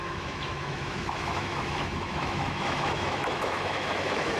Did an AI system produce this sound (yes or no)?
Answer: yes